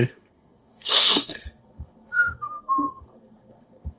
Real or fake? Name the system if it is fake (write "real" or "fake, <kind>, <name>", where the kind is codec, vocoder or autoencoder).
fake, codec, SNAC